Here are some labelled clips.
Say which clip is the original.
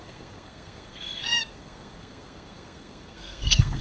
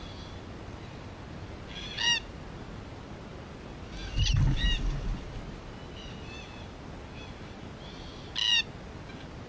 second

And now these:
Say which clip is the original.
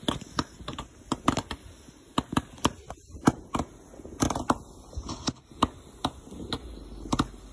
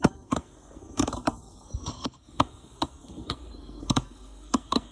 first